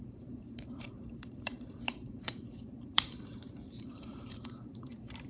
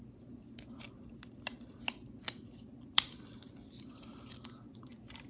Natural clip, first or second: second